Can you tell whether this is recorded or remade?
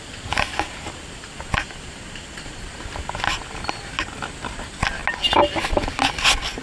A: recorded